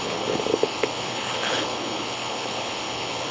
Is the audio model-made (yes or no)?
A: yes